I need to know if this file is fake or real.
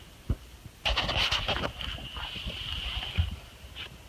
real